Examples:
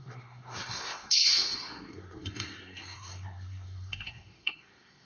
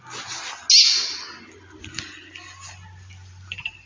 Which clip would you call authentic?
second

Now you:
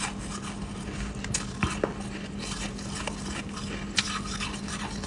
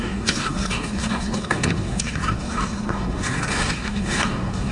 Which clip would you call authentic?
first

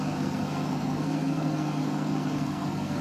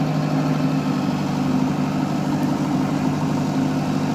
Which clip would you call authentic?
second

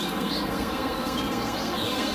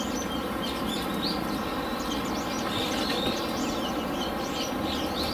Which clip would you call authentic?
second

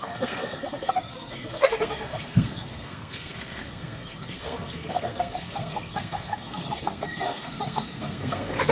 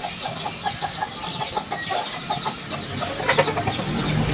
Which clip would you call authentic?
second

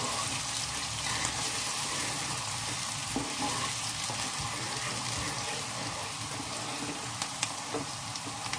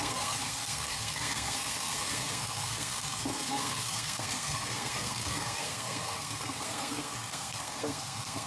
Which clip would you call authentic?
first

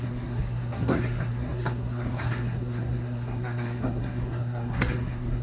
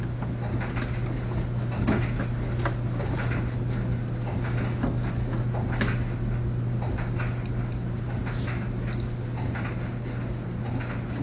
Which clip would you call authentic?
second